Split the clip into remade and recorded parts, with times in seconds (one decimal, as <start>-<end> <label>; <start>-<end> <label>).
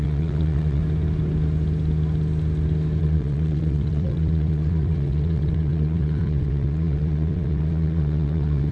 0.0-0.8 remade; 0.8-3.0 recorded; 3.0-8.7 remade